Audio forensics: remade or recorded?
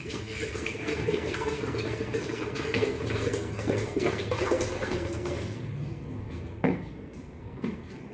remade